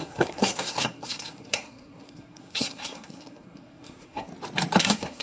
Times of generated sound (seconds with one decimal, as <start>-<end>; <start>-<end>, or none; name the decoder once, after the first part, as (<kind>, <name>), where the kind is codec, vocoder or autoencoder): 0.0-4.3 (codec, SNAC); 4.8-5.2